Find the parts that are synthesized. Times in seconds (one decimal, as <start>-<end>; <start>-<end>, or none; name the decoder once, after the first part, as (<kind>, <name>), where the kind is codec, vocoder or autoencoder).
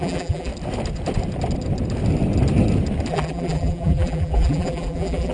0.0-0.5 (vocoder, BigVGAN v2); 3.1-5.3